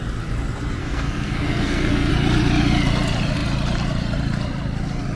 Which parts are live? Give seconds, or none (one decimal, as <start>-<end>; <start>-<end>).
0.0-0.8; 2.1-5.2